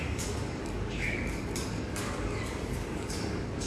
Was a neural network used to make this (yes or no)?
yes